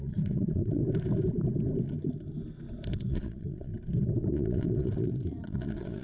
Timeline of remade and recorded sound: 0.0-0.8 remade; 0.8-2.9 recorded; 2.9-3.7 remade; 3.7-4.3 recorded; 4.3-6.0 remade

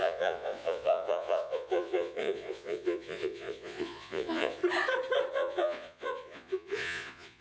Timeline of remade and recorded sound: 0.0-4.6 remade; 4.6-5.3 recorded; 5.3-7.4 remade